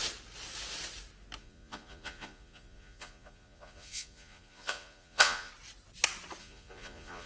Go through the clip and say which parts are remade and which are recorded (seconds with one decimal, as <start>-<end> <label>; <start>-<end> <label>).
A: 0.0-1.4 recorded; 1.4-5.5 remade; 5.5-6.4 recorded; 6.4-7.3 remade